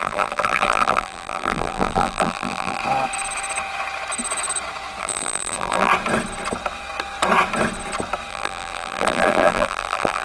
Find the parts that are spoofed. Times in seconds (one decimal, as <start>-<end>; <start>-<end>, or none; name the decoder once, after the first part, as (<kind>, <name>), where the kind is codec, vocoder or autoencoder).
0.0-2.8 (vocoder, BigVGAN v2); 5.0-5.9; 8.3-10.2